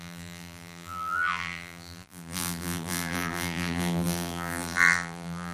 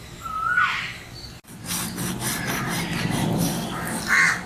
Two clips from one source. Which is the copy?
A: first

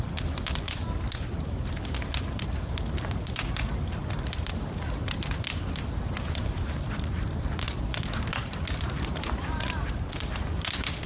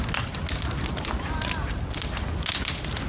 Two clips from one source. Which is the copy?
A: first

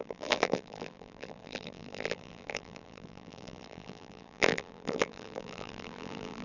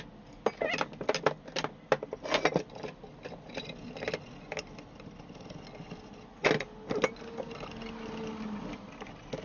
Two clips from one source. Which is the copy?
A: first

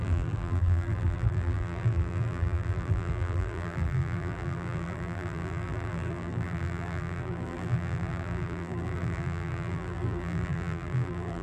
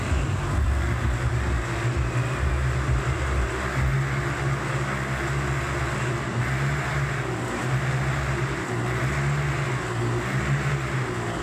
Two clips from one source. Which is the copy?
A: first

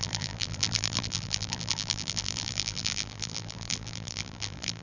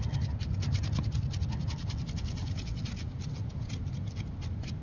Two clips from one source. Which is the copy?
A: first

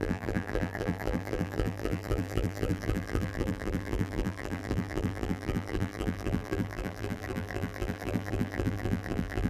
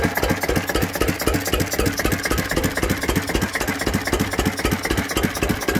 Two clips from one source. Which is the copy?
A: first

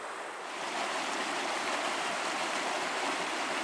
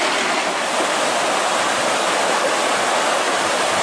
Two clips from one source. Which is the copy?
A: first